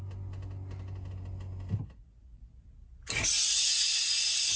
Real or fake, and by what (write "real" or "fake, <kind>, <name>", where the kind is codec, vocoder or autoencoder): real